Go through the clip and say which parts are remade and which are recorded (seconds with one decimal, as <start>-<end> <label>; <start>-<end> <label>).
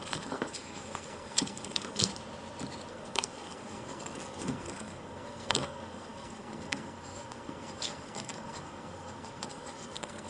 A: 0.0-2.1 remade; 2.1-2.9 recorded; 2.9-10.3 remade